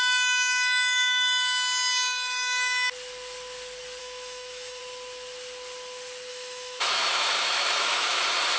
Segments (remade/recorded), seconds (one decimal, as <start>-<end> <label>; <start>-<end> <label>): 0.0-4.0 recorded; 4.0-4.8 remade; 4.8-6.3 recorded; 6.3-8.2 remade; 8.2-8.6 recorded

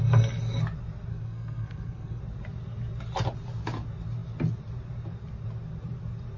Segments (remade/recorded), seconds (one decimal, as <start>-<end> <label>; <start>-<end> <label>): 0.0-1.1 recorded; 1.1-2.2 remade; 2.2-6.4 recorded